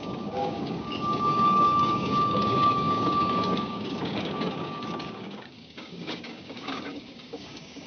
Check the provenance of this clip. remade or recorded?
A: remade